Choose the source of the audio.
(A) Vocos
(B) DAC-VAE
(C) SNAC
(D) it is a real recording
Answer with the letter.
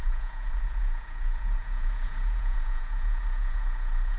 A